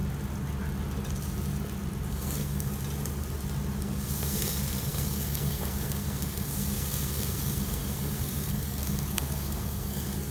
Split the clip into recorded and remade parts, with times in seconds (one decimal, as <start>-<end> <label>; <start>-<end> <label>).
0.0-2.1 recorded; 2.1-2.7 remade; 2.7-3.8 recorded; 3.8-10.3 remade